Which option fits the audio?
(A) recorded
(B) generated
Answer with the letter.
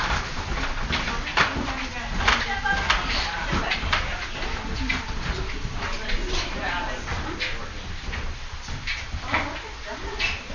A